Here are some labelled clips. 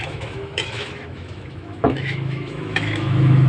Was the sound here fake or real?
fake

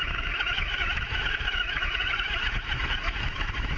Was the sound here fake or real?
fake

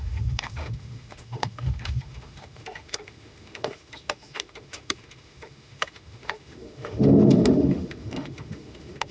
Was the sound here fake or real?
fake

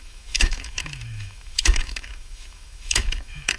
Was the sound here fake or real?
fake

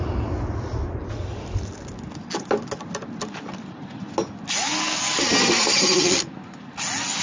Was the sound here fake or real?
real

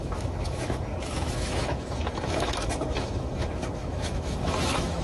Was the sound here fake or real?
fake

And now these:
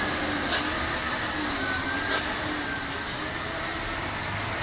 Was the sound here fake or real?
real